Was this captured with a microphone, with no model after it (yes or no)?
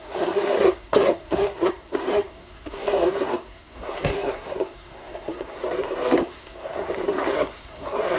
no